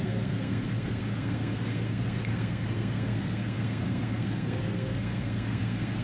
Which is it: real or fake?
fake